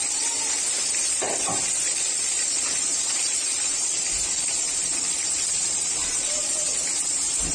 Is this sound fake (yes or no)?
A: yes